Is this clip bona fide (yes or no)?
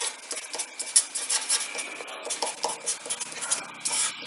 yes